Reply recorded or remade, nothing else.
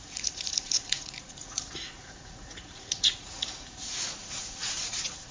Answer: remade